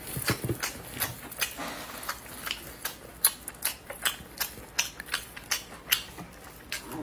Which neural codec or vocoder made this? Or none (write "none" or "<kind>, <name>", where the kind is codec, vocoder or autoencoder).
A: none